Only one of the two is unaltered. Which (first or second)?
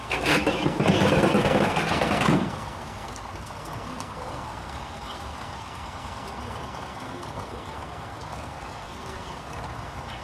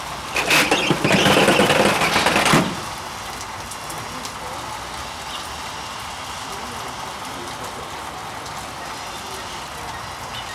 second